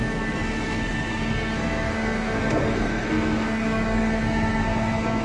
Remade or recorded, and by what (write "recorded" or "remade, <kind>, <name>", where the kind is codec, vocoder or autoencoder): remade, codec, SNAC